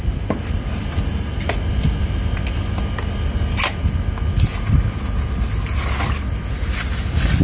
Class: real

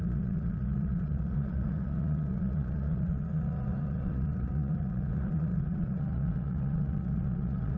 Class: fake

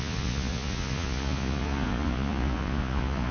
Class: fake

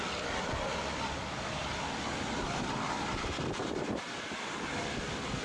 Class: real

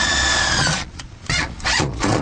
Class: fake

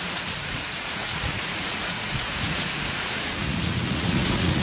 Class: fake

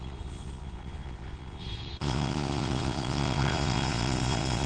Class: fake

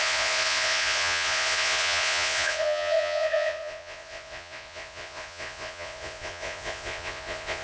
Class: fake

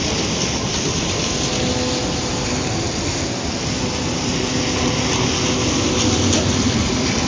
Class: real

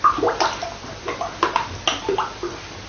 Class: real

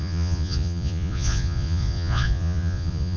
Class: fake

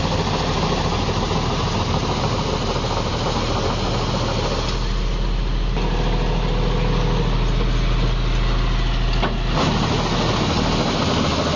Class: real